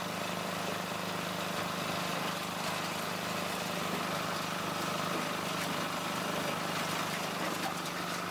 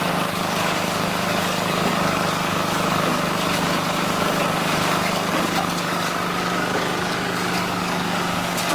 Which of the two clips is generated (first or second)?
second